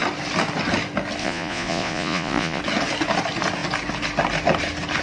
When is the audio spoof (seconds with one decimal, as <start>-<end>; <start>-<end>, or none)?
1.2-2.6